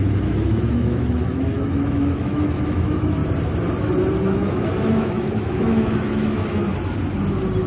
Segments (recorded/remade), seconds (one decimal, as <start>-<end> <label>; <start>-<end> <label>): 0.0-3.2 remade; 3.2-4.1 recorded; 4.1-6.7 remade; 6.7-7.7 recorded